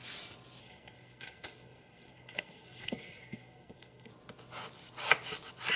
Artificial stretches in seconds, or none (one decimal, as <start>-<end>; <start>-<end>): 0.6-4.1